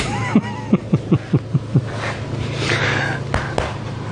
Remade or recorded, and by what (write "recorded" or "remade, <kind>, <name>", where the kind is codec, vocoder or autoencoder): recorded